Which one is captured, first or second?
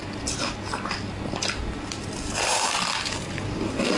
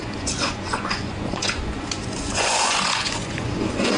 first